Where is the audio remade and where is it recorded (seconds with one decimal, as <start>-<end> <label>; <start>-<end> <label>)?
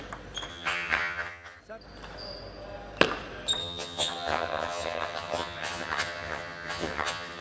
0.0-0.5 recorded; 0.5-1.6 remade; 1.6-3.6 recorded; 3.6-7.4 remade